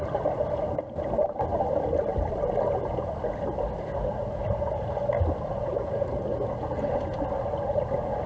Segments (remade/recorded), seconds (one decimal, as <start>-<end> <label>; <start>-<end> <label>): 0.0-8.3 recorded